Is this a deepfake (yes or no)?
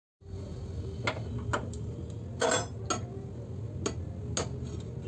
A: no